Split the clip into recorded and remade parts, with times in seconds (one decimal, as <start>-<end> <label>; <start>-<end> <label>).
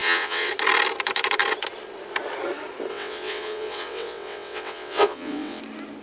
0.0-0.5 remade; 0.5-2.9 recorded; 2.9-5.6 remade; 5.6-6.0 recorded